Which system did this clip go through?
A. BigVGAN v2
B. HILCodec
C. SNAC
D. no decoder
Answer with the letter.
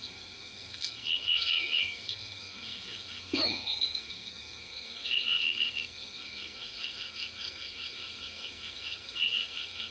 C